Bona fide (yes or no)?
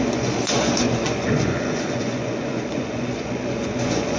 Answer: no